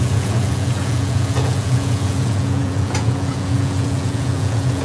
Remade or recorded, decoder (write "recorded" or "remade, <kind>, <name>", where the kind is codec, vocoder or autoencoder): remade, vocoder, Vocos